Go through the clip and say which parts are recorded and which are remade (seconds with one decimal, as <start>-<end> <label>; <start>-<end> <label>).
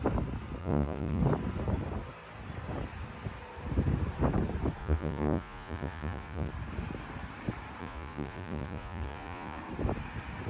0.0-0.6 recorded; 0.6-1.2 remade; 1.2-4.8 recorded; 4.8-6.5 remade; 6.5-7.8 recorded; 7.8-9.6 remade; 9.6-10.5 recorded